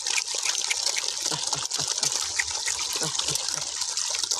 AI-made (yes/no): no